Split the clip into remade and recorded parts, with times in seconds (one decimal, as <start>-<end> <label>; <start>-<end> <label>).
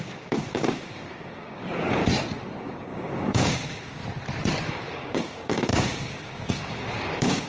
0.0-2.0 remade; 2.0-2.6 recorded; 2.6-4.0 remade; 4.0-4.7 recorded; 4.7-7.5 remade